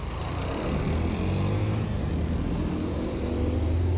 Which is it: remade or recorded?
recorded